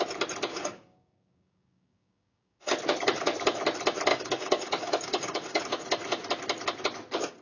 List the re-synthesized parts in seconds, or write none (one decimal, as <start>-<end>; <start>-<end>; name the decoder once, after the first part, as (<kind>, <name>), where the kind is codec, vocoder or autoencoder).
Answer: 0.5-2.7 (codec, DAC); 4.1-5.6

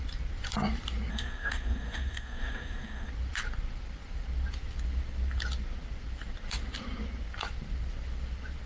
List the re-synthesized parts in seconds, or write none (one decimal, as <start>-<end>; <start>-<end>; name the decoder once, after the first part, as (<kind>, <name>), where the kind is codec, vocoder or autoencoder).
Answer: 1.1-3.1 (codec, DAC)

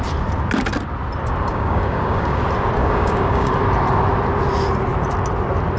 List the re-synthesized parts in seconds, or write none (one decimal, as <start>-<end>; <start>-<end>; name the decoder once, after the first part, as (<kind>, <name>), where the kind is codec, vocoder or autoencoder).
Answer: 1.5-2.4 (codec, DAC); 2.8-3.5

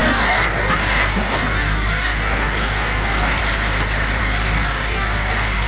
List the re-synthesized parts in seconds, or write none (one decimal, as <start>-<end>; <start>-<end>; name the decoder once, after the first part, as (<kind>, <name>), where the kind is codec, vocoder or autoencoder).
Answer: 0.0-3.4 (codec, DAC); 4.2-5.7